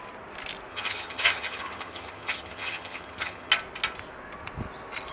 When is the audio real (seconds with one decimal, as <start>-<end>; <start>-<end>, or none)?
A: 0.0-0.7; 3.5-5.1